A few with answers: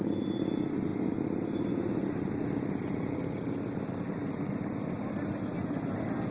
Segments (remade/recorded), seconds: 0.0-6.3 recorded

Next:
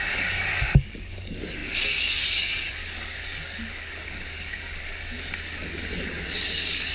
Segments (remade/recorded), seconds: 0.0-6.9 remade